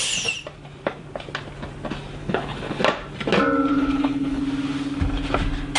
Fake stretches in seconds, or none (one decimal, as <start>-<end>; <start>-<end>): 2.2-2.8; 3.7-4.4